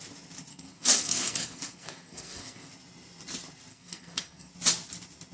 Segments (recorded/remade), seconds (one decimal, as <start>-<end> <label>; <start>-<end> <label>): 0.0-0.5 recorded; 0.5-2.7 remade; 2.7-3.7 recorded; 3.7-4.5 remade; 4.5-5.3 recorded